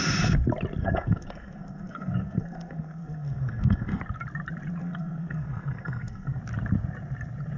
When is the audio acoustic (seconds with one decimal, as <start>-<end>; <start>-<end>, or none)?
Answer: 0.0-0.8; 4.0-4.8; 6.4-7.6